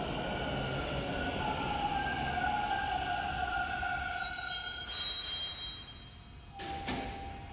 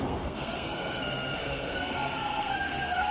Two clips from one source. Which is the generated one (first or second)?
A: second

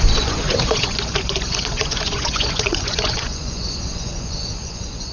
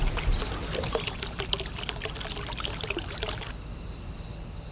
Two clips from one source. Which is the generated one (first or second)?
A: first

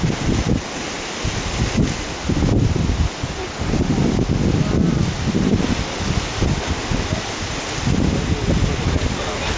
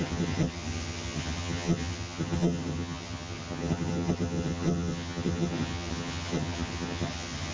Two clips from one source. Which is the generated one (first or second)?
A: second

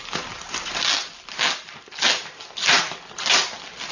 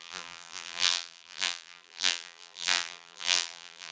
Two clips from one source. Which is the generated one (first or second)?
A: second